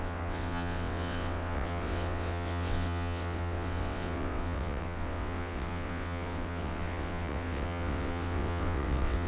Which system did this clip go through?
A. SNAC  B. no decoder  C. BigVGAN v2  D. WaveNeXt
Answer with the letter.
D